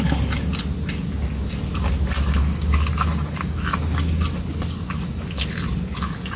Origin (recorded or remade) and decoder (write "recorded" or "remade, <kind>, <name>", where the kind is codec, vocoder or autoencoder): recorded